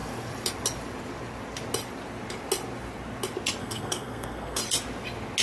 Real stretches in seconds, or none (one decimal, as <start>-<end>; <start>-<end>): 0.0-3.6; 4.6-5.4